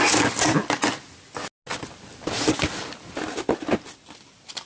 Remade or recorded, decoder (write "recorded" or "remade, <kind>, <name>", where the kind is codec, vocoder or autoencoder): recorded